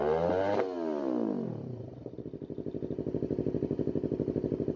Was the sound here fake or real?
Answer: real